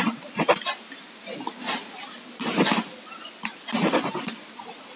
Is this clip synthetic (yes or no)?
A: no